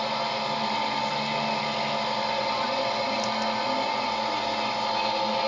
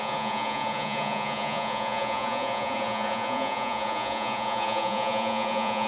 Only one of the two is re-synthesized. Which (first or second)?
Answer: second